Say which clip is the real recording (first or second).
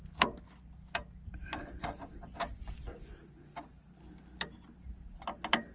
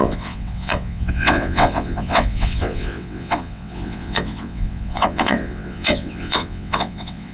first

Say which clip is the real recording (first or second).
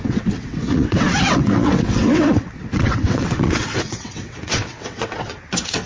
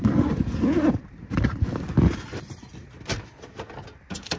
second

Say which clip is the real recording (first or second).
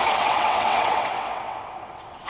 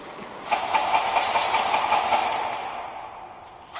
second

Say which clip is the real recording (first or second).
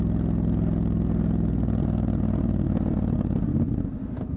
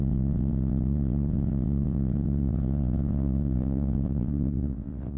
first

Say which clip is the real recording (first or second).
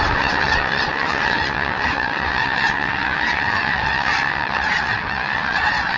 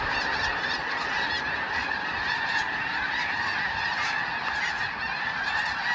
second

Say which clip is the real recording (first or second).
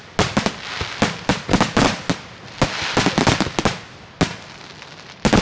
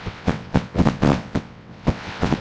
first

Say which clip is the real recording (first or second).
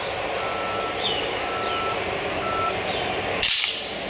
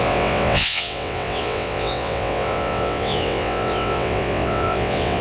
first